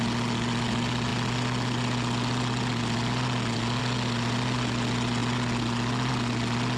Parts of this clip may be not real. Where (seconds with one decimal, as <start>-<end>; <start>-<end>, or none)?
none